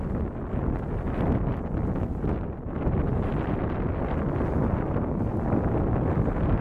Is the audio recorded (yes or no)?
yes